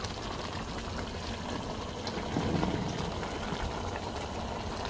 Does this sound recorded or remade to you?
recorded